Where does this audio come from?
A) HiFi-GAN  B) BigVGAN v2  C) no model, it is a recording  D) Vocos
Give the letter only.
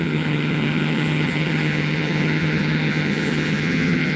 A